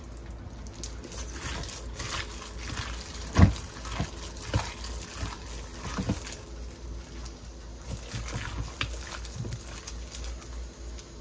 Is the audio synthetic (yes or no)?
no